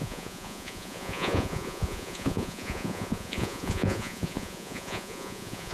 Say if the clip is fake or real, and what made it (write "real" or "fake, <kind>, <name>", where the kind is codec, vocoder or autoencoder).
fake, vocoder, Vocos